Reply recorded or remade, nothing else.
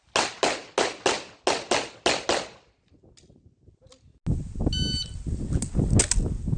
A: recorded